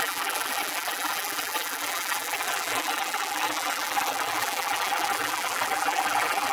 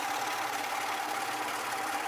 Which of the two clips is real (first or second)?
second